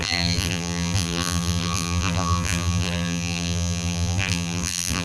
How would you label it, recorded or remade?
remade